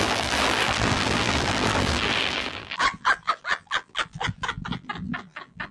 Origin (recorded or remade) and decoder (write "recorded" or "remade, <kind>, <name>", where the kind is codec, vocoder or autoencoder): remade, vocoder, BigVGAN v2